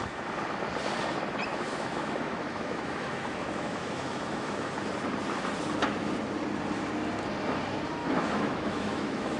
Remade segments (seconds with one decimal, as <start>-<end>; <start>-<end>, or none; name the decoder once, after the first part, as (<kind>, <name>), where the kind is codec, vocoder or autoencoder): 1.5-4.8 (autoencoder, DAC-VAE); 8.0-9.4

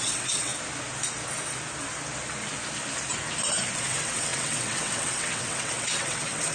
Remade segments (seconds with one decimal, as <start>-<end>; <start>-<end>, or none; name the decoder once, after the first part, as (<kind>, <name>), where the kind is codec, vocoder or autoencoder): 0.0-0.5 (vocoder, WaveNeXt); 3.8-6.5

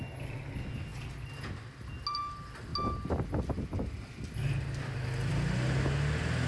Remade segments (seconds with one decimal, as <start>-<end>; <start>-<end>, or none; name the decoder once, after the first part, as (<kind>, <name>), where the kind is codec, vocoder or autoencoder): none

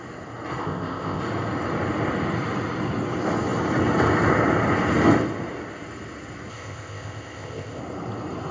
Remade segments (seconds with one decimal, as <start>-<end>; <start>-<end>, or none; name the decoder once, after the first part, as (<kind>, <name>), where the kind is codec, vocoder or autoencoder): 0.6-1.2 (codec, ZipCodec); 6.5-7.8

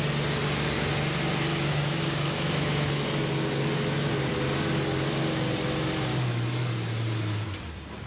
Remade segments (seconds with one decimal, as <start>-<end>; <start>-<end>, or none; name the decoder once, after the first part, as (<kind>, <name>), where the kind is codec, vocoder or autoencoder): 1.5-2.9 (autoencoder, DAC-VAE); 6.1-6.7

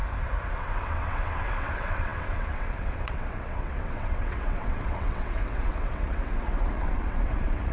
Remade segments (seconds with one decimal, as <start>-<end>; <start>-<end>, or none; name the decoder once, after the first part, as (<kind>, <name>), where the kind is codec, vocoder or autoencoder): 0.5-7.7 (vocoder, WaveNeXt)

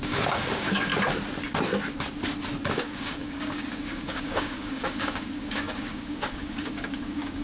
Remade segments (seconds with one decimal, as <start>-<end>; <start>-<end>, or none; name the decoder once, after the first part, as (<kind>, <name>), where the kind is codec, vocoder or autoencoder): 0.0-0.9 (codec, DAC); 2.7-7.4